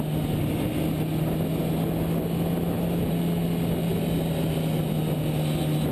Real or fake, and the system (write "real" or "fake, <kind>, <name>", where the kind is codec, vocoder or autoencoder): real